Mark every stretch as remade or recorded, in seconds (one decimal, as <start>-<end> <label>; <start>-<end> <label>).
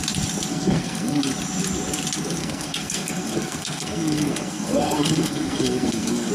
0.0-0.5 recorded; 0.5-1.2 remade; 1.2-2.4 recorded; 2.4-6.3 remade